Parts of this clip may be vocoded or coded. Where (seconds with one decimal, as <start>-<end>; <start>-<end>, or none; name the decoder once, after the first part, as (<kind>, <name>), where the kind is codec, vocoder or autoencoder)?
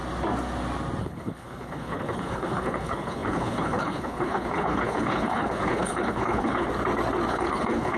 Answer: 1.0-6.7 (codec, HILCodec); 7.3-8.0